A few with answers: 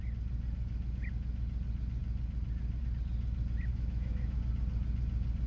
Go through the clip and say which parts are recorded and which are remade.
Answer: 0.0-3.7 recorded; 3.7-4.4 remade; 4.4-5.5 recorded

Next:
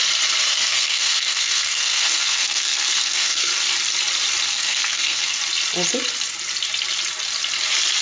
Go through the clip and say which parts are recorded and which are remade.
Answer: 0.0-0.4 recorded; 0.4-3.5 remade; 3.5-4.5 recorded; 4.5-5.4 remade; 5.4-8.0 recorded